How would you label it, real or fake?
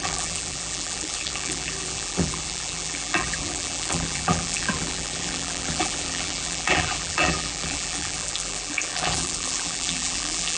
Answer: fake